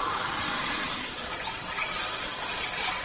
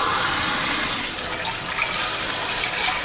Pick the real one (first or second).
second